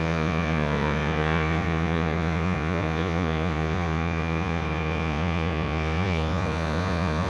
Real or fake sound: fake